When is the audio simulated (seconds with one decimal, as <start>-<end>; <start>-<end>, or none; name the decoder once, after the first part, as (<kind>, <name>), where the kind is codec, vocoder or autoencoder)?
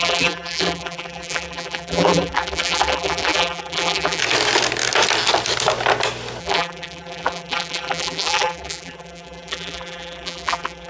0.0-4.2 (vocoder, BigVGAN v2); 6.4-10.9